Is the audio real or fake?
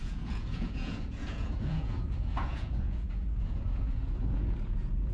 fake